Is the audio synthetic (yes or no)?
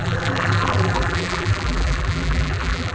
yes